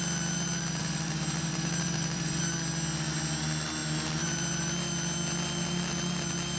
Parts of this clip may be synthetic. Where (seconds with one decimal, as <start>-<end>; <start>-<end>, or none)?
0.8-2.4